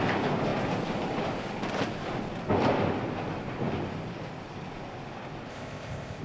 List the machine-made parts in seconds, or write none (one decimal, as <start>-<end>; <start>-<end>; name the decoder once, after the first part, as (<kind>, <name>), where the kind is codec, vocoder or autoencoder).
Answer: 5.5-6.2 (codec, ZipCodec)